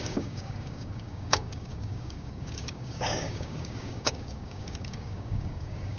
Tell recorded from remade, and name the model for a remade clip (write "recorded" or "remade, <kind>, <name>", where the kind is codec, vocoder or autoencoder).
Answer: remade, codec, DAC